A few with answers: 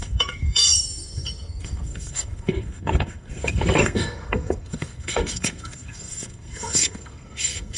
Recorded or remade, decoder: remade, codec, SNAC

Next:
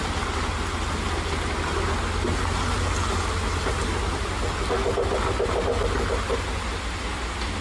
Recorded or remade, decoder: recorded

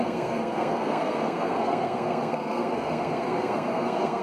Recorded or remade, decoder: remade, codec, SNAC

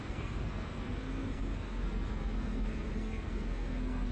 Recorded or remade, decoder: remade, codec, SNAC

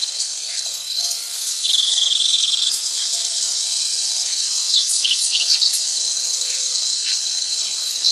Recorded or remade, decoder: remade, codec, SNAC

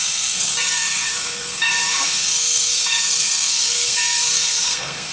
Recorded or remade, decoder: remade, codec, SNAC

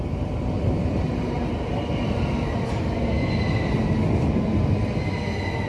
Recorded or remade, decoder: recorded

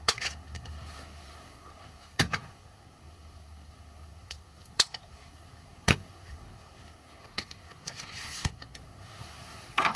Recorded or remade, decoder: remade, codec, SNAC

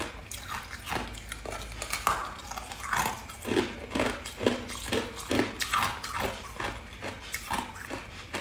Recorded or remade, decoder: recorded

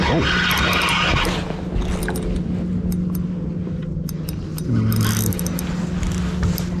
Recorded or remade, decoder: recorded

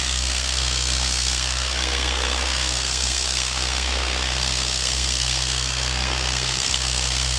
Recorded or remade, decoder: remade, codec, SNAC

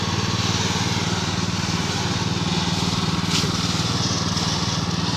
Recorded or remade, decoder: recorded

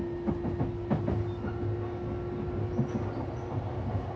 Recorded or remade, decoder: recorded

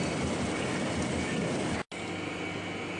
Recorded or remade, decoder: recorded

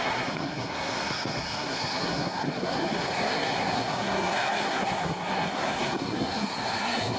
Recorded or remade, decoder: remade, codec, SNAC